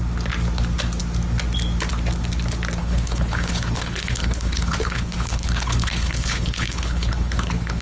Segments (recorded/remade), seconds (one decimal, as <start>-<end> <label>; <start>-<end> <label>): 0.0-2.8 recorded; 2.8-7.8 remade